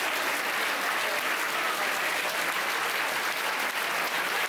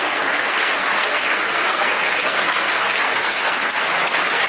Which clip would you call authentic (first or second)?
first